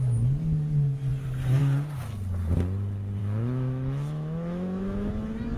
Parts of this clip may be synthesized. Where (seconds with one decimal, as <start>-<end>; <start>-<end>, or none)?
3.2-5.1